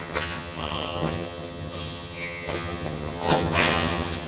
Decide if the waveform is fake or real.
fake